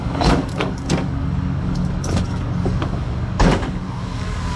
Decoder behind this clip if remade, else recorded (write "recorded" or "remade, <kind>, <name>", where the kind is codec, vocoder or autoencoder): remade, codec, DAC